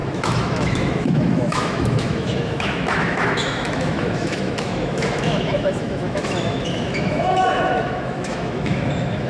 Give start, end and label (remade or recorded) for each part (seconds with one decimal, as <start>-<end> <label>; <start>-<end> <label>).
0.0-9.3 remade